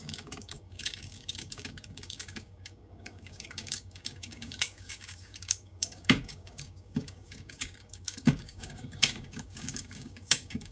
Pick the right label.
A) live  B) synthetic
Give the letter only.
B